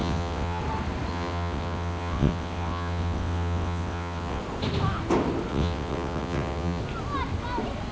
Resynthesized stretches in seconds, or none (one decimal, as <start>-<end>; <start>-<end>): 0.0-0.6; 1.1-4.4; 5.5-6.8